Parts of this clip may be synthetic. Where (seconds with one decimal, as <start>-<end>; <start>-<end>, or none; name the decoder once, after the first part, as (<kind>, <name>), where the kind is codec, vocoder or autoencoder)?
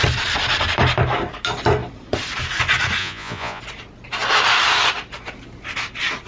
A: 3.0-3.6 (vocoder, Vocos)